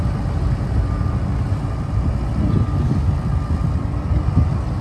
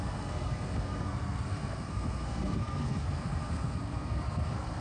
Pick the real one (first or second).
first